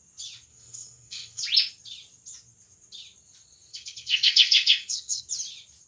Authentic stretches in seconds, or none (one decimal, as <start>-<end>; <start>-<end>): 0.0-0.5; 1.4-3.7; 5.2-5.9